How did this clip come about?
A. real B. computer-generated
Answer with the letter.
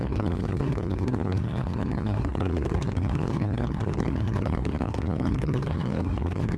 B